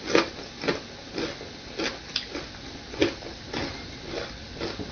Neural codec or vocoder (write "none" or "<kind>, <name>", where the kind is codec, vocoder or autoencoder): none